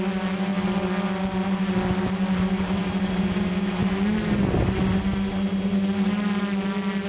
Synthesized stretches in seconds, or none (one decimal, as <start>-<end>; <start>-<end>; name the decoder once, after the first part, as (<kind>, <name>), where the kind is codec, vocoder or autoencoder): none